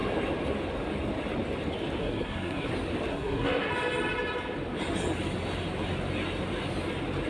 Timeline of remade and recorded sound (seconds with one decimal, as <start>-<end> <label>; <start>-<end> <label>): 0.0-2.0 recorded; 2.0-2.7 remade; 2.7-3.1 recorded; 3.1-3.7 remade; 3.7-7.3 recorded